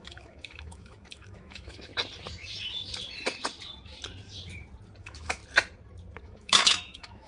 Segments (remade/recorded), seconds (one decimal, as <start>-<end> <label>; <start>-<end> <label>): 0.0-1.9 remade; 1.9-5.0 recorded; 5.0-5.4 remade; 5.4-6.2 recorded; 6.2-7.3 remade